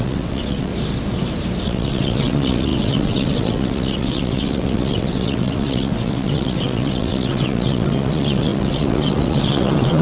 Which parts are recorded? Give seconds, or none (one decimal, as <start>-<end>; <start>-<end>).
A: 0.7-1.6